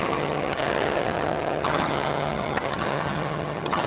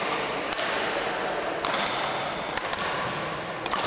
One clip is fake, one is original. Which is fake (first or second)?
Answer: first